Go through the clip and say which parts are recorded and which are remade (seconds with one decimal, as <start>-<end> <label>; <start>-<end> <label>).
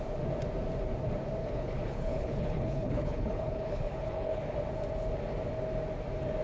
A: 0.0-1.4 recorded; 1.4-4.4 remade; 4.4-6.4 recorded